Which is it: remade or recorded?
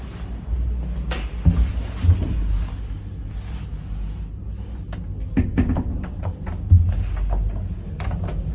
recorded